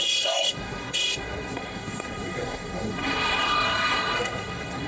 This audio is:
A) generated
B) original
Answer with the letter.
A